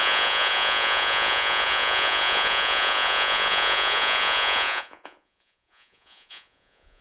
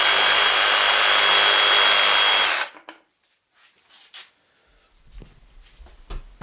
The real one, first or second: second